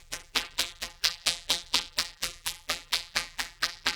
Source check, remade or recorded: remade